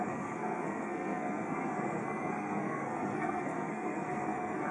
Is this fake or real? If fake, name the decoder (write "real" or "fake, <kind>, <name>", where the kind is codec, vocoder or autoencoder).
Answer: fake, codec, SNAC